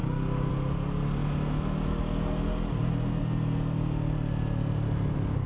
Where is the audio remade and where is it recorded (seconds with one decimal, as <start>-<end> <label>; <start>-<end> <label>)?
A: 0.0-0.5 remade; 0.5-5.5 recorded